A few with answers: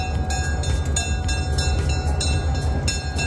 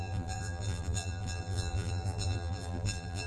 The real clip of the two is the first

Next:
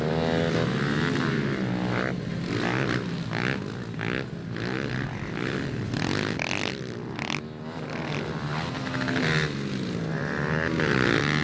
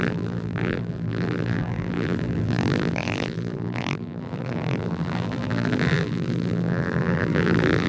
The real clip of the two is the first